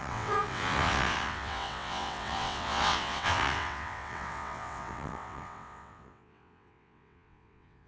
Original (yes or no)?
no